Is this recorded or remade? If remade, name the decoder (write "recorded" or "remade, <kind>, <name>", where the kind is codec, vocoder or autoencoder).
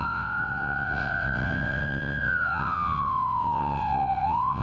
remade, vocoder, WaveNeXt